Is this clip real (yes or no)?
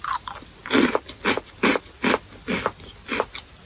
yes